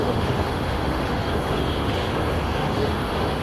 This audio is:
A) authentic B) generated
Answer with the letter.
B